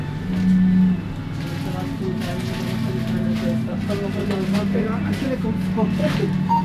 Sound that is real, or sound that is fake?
real